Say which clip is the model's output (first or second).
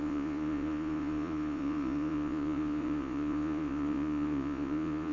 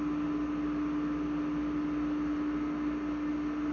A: first